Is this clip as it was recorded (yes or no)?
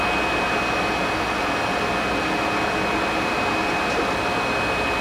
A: yes